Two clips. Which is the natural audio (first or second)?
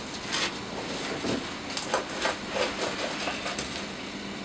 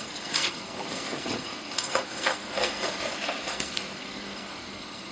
first